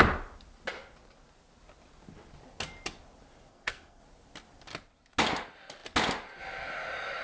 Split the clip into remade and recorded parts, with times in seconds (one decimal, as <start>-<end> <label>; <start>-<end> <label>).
0.0-3.5 recorded; 3.5-4.0 remade; 4.0-7.2 recorded

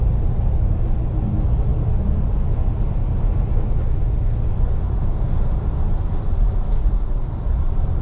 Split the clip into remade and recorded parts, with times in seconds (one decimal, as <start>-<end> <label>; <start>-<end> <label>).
0.0-8.0 recorded

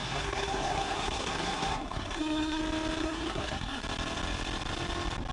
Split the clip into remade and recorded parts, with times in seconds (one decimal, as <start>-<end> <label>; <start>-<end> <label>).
0.0-2.6 remade; 2.6-3.0 recorded; 3.0-3.8 remade; 3.8-5.3 recorded

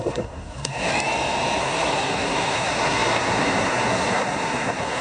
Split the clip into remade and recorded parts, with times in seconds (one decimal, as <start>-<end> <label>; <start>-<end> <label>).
0.0-0.9 remade; 0.9-1.6 recorded; 1.6-5.0 remade

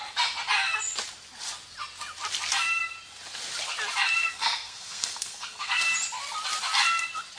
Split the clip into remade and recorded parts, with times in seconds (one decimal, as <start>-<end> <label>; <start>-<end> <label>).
0.0-4.2 recorded; 4.2-5.8 remade; 5.8-7.4 recorded

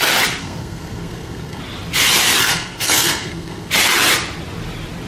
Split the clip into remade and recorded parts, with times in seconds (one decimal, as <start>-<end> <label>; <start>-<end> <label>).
0.0-0.4 recorded; 0.4-1.6 remade; 1.6-2.4 recorded; 2.4-3.7 remade; 3.7-5.1 recorded